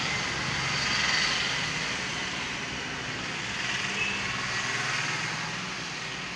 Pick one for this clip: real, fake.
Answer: real